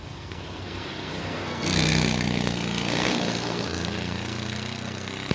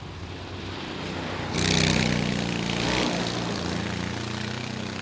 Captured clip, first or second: second